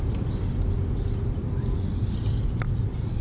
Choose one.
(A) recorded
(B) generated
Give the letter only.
B